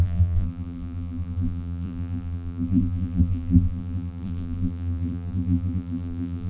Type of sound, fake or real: fake